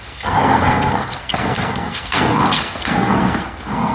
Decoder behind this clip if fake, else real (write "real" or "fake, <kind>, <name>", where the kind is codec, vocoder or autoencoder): fake, codec, SNAC